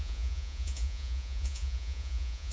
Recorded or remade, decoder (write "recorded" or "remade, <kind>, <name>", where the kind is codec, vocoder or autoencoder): remade, vocoder, Vocos